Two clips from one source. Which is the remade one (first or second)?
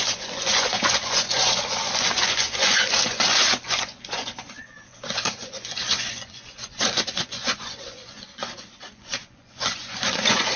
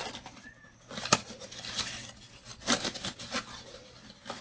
first